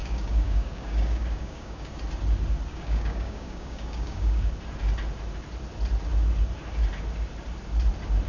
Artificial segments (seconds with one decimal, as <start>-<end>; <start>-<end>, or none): 0.0-2.0; 2.7-4.5

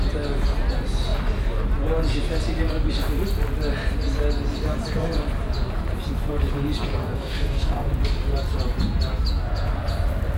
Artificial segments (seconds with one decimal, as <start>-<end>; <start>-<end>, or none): 7.0-7.9

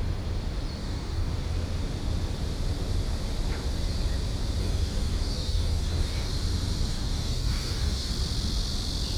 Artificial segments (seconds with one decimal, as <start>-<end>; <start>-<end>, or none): 0.8-1.3; 4.6-6.3; 6.9-8.1

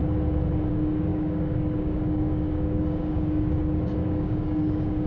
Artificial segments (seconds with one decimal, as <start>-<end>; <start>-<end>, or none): 0.7-5.1

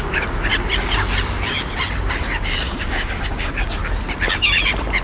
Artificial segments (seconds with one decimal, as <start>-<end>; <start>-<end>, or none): 0.0-0.5; 2.2-3.8

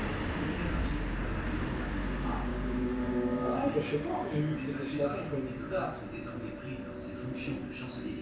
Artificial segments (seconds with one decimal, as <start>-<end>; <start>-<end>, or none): 2.5-4.4

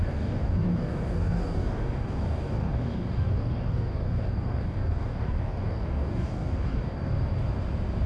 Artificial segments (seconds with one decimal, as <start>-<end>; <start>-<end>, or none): 0.0-7.1